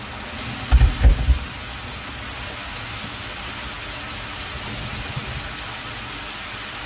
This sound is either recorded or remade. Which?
recorded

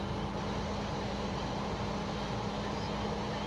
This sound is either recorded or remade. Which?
recorded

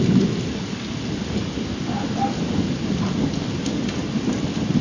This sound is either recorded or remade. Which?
recorded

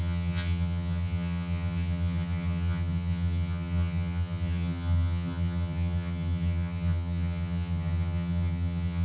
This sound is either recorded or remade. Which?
remade